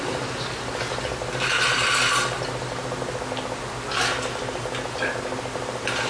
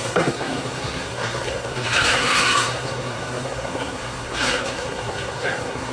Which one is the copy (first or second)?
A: second